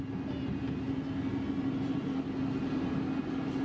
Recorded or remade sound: recorded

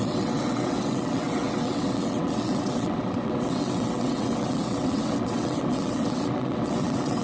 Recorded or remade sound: remade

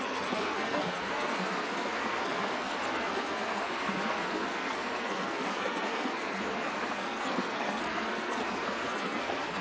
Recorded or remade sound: remade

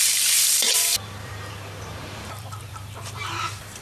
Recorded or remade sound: remade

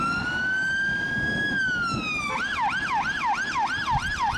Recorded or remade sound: recorded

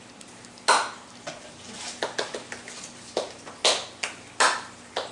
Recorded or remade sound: recorded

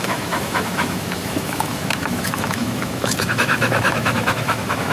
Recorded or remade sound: remade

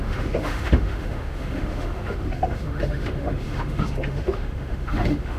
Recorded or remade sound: remade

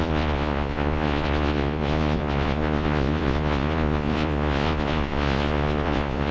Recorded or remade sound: remade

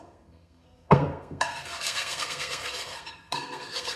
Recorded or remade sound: remade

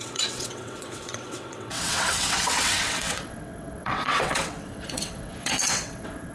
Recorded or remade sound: remade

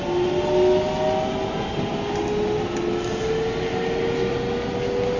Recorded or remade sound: recorded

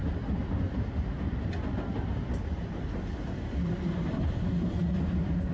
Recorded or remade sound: recorded